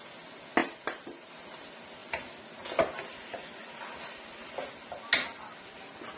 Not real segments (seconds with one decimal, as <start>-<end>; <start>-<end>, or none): none